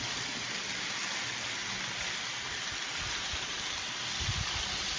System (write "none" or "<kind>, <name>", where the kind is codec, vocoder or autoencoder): none